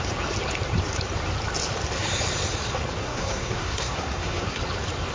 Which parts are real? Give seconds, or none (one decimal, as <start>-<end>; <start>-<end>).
0.0-3.0; 4.6-5.1